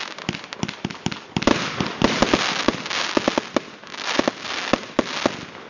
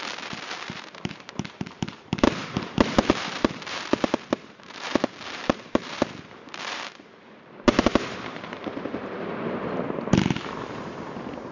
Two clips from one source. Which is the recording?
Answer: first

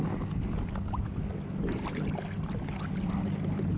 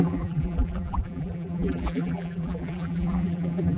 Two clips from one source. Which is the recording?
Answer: first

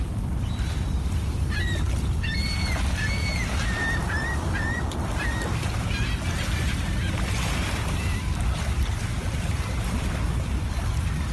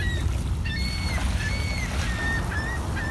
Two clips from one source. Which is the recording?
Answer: second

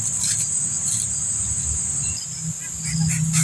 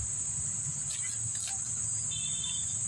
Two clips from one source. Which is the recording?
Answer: second